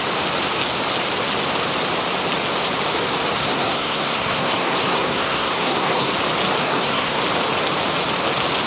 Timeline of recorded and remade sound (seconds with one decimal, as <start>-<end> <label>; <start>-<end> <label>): 0.0-3.4 recorded; 3.4-6.1 remade; 6.1-6.6 recorded; 6.6-7.2 remade; 7.2-8.7 recorded